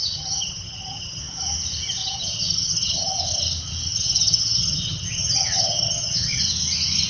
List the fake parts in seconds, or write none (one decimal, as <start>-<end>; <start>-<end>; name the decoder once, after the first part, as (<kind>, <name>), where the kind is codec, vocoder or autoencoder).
0.0-1.2 (vocoder, HiFi-GAN); 2.0-3.2; 3.9-6.4